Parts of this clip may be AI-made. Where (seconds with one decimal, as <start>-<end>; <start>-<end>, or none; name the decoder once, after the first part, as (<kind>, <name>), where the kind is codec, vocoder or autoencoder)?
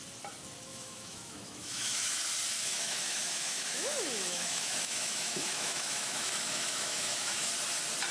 0.7-2.2 (autoencoder, DAC-VAE); 2.6-7.5